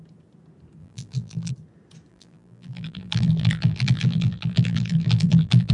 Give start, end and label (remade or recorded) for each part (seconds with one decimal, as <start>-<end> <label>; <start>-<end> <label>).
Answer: 0.0-0.8 recorded; 0.8-1.5 remade; 1.5-2.1 recorded; 2.1-5.7 remade